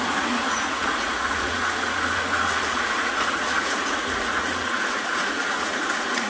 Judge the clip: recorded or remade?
remade